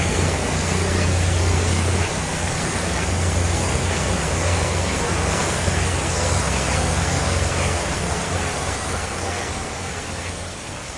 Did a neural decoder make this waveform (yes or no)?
yes